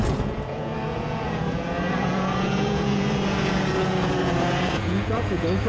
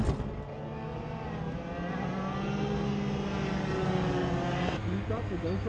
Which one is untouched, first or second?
second